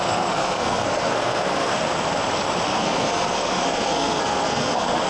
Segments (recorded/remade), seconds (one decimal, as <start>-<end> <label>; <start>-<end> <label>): 0.0-1.7 remade; 1.7-2.7 recorded; 2.7-5.1 remade